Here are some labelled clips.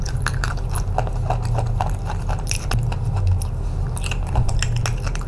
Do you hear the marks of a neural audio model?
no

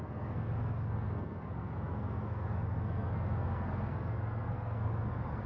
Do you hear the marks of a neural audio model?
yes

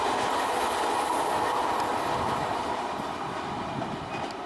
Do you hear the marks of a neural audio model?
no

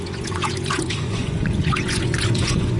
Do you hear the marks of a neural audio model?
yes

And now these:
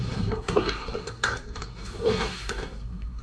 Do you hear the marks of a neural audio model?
yes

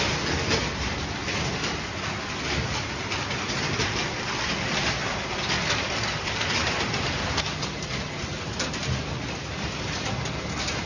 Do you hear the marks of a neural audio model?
no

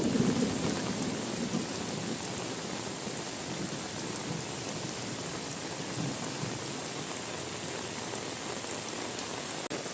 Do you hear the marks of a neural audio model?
no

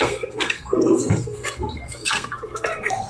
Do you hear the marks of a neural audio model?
yes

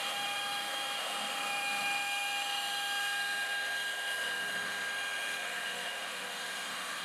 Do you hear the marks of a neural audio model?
yes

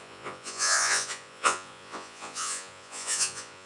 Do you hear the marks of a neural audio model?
yes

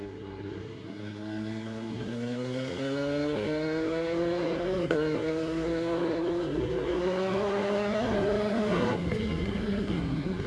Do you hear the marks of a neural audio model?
yes